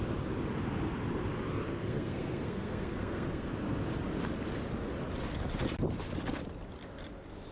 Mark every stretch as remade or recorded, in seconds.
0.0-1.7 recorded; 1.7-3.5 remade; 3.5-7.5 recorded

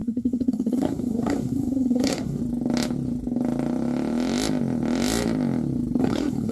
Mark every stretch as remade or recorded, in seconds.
0.0-2.4 remade; 2.4-6.0 recorded; 6.0-6.5 remade